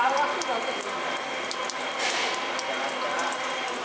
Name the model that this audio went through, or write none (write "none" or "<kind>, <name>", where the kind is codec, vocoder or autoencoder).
none